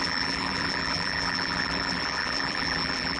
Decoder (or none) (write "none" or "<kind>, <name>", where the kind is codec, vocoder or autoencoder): vocoder, BigVGAN v2